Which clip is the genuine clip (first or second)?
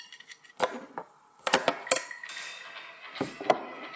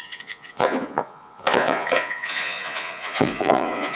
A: first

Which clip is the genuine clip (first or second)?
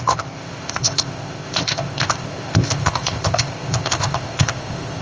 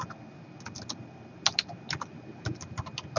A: second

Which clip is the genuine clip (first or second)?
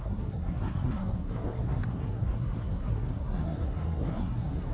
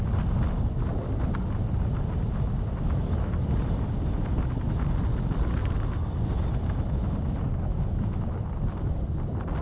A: second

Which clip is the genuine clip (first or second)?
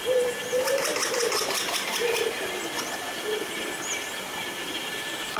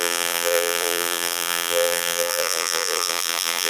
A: first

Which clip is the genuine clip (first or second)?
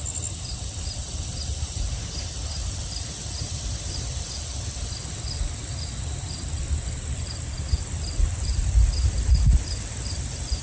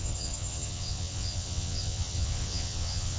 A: first